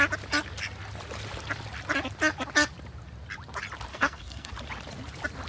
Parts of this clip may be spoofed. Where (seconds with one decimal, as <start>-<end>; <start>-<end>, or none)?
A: 3.9-4.5